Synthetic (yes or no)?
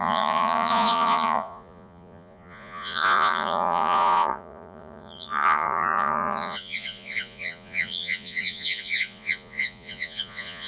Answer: yes